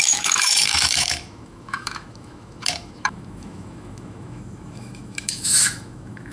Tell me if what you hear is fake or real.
fake